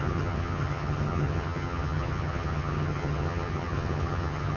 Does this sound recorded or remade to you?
remade